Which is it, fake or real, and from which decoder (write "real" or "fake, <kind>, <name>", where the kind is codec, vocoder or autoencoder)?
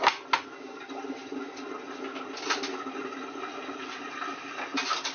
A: real